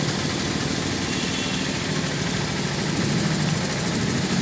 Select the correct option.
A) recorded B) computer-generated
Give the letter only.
A